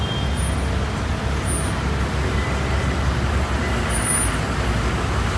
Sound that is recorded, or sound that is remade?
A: recorded